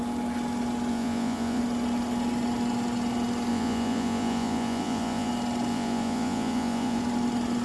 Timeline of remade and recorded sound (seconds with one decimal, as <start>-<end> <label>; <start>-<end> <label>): 0.0-0.9 recorded; 0.9-1.6 remade; 1.6-3.5 recorded; 3.5-5.3 remade; 5.3-5.7 recorded; 5.7-7.0 remade; 7.0-7.6 recorded